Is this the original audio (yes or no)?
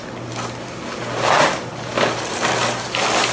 yes